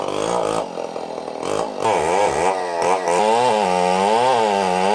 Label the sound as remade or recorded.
recorded